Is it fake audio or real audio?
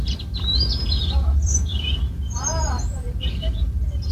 fake